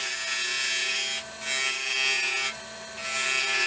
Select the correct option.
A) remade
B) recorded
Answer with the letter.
B